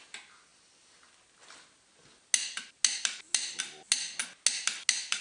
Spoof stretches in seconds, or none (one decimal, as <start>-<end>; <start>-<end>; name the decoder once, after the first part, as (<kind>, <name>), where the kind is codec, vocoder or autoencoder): none